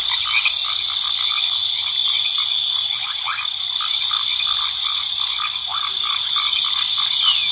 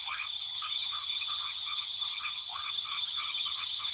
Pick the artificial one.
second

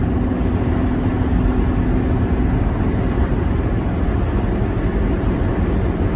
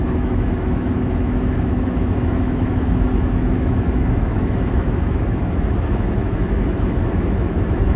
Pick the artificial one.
second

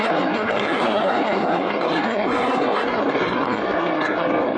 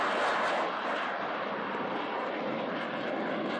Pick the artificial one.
first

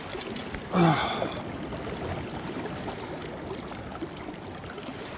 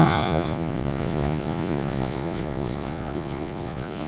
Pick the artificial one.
second